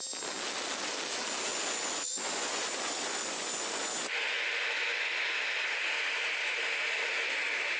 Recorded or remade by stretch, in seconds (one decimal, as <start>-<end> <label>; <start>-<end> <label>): 0.0-1.5 recorded; 1.5-5.1 remade; 5.1-7.8 recorded